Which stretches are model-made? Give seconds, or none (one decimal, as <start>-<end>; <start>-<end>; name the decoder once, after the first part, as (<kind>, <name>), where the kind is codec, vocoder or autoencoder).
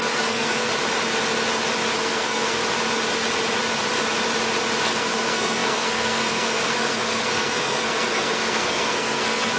0.0-0.7 (codec, SNAC); 2.0-2.6; 4.8-9.6